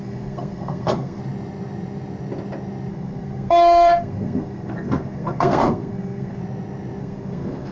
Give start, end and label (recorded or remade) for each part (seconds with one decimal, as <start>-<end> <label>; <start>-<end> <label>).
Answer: 0.0-1.2 remade; 1.2-2.9 recorded; 2.9-6.4 remade; 6.4-7.0 recorded; 7.0-7.7 remade